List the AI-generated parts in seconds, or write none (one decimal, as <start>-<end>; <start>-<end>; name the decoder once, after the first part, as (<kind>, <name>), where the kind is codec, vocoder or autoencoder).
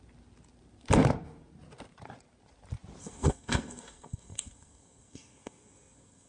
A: 3.0-6.3 (codec, SNAC)